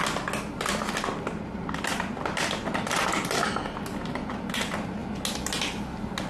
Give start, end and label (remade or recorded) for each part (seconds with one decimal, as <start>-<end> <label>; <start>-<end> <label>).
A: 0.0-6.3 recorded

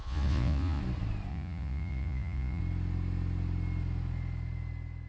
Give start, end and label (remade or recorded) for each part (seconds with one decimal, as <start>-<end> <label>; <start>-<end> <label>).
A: 0.0-0.8 remade; 0.8-1.3 recorded; 1.3-2.6 remade; 2.6-5.1 recorded

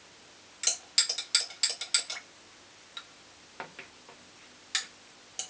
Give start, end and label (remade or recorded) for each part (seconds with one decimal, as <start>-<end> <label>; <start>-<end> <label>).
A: 0.0-5.5 recorded